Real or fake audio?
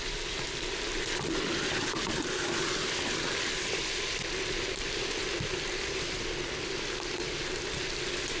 fake